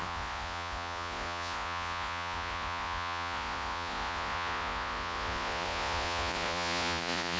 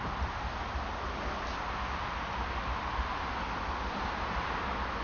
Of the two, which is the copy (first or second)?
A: first